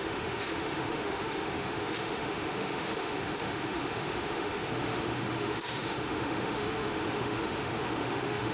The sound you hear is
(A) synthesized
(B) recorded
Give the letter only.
A